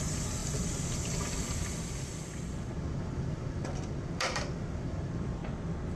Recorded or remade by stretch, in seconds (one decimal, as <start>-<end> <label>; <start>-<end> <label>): 0.0-5.4 remade; 5.4-6.0 recorded